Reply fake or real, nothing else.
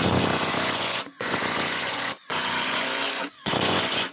fake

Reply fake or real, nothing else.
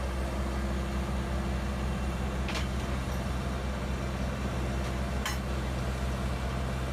real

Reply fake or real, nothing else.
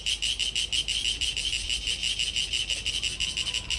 real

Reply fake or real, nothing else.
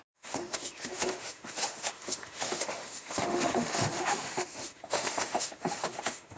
fake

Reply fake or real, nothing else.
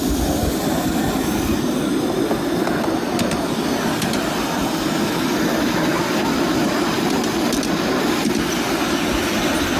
real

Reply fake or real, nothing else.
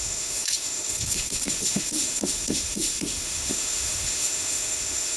fake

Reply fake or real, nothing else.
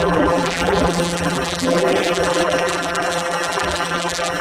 fake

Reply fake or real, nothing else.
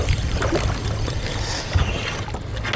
real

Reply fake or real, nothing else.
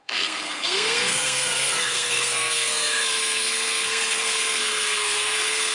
fake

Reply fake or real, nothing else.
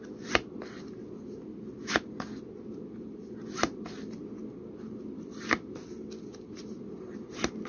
real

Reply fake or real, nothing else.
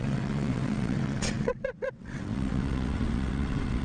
fake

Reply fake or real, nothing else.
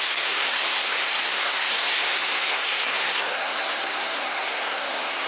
fake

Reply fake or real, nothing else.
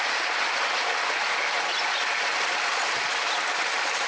real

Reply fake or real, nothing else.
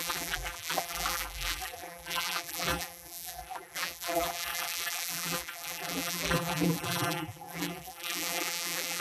fake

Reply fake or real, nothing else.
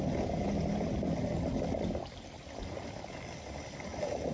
real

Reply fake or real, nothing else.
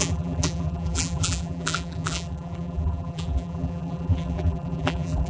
fake